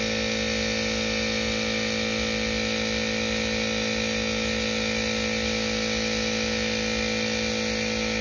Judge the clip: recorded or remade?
recorded